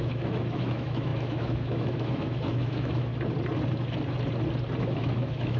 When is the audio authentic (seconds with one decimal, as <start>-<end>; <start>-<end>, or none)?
3.1-4.8